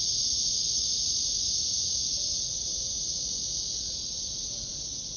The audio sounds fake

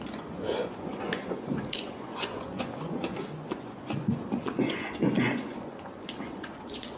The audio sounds fake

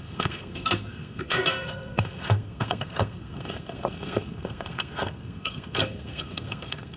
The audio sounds fake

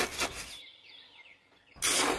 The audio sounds real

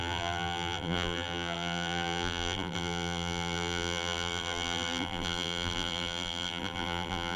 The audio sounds fake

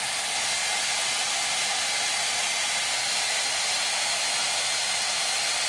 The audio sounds real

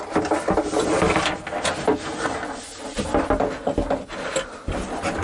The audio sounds real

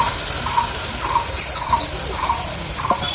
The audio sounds real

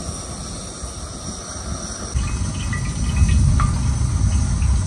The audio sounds real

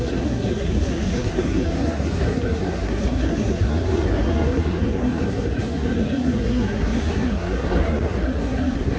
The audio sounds fake